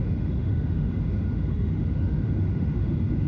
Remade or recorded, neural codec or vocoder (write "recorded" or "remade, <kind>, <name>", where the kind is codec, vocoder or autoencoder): remade, autoencoder, DAC-VAE